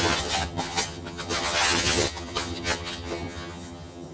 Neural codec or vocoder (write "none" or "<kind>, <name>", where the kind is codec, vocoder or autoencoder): vocoder, HiFi-GAN